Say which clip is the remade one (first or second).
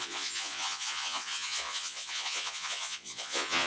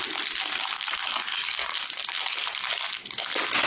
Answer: first